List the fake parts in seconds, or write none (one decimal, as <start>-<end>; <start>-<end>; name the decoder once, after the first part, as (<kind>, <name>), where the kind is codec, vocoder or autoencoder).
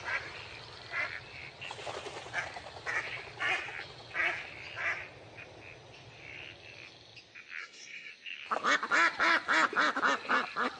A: 7.6-8.1 (codec, SNAC)